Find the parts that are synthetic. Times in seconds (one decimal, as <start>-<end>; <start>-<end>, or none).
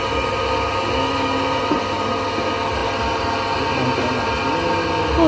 none